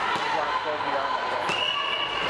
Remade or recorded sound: recorded